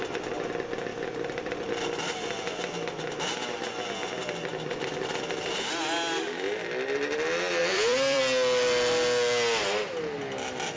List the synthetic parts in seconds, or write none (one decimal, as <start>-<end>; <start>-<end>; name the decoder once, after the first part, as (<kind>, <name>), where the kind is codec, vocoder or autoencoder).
0.9-1.5 (vocoder, BigVGAN v2); 7.6-8.2